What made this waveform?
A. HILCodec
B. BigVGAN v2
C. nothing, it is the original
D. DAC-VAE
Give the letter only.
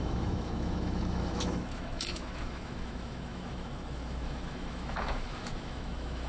D